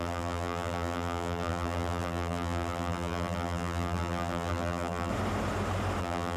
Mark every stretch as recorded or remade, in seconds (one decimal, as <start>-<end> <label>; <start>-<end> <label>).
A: 0.0-5.1 remade; 5.1-6.0 recorded; 6.0-6.4 remade